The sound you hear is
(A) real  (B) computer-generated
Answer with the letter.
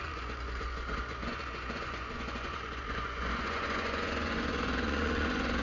B